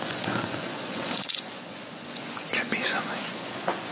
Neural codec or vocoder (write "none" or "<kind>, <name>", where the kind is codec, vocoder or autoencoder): vocoder, Vocos